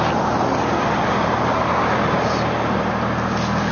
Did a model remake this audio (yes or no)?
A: no